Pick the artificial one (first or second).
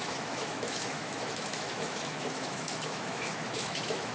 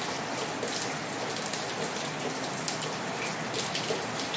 first